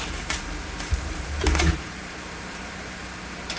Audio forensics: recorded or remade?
remade